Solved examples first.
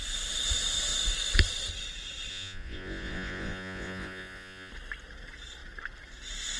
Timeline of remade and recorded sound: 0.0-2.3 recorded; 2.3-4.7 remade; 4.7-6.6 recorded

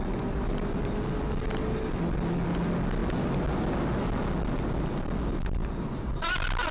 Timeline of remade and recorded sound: 0.0-6.7 recorded

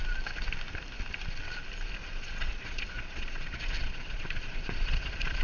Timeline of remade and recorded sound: 0.0-2.0 recorded; 2.0-5.4 remade

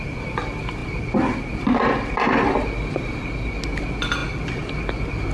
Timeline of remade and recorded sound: 0.0-5.3 recorded

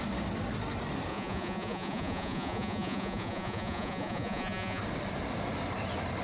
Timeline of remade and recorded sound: 0.0-1.1 recorded; 1.1-4.8 remade; 4.8-6.2 recorded

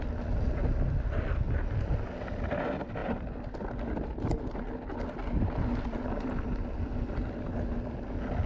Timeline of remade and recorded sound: 0.0-8.5 recorded

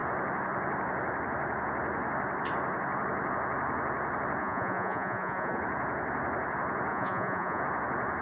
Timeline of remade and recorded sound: 0.0-4.4 recorded; 4.4-5.6 remade; 5.6-6.9 recorded; 6.9-7.6 remade; 7.6-8.2 recorded